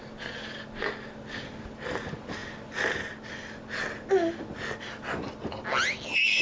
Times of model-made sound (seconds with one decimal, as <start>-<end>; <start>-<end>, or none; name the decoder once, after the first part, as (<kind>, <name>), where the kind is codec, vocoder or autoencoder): none